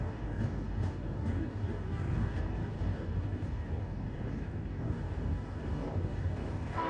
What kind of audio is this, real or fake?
fake